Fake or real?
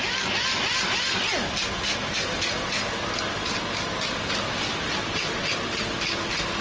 real